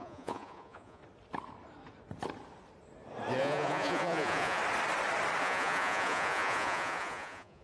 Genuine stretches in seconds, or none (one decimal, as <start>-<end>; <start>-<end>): 1.0-3.4; 4.6-5.4